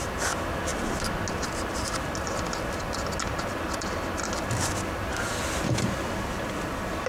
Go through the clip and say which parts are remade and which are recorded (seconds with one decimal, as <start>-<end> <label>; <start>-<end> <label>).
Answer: 0.0-7.1 recorded

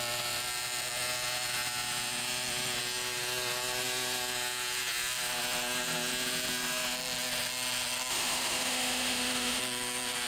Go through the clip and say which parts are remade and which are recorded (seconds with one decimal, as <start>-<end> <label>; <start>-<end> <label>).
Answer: 0.0-8.1 recorded; 8.1-9.6 remade; 9.6-10.3 recorded

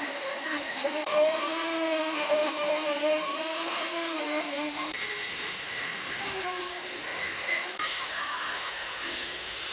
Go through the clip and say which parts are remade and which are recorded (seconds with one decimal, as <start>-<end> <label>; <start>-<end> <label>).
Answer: 0.0-9.7 remade

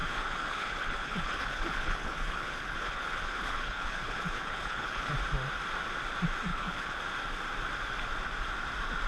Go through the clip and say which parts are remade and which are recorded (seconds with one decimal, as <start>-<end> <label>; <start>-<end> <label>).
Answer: 0.0-5.1 remade; 5.1-6.5 recorded; 6.5-7.0 remade; 7.0-9.1 recorded

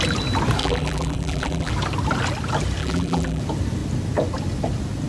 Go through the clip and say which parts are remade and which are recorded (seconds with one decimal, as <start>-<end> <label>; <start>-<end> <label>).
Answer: 0.0-0.6 recorded; 0.6-1.7 remade; 1.7-2.8 recorded; 2.8-3.4 remade; 3.4-5.1 recorded